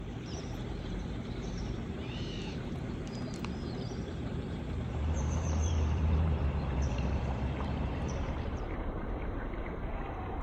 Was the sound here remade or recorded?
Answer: remade